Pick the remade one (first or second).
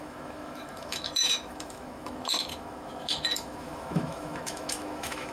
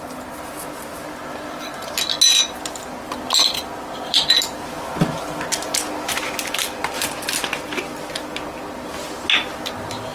first